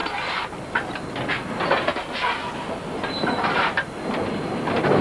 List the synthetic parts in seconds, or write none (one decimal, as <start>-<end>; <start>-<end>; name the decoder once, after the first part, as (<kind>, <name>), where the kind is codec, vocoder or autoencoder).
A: none

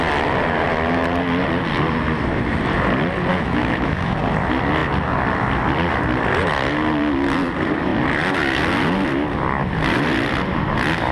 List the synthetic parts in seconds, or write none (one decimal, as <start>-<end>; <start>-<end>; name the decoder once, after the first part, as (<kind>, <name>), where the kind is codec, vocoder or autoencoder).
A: 3.3-4.2 (autoencoder, DAC-VAE)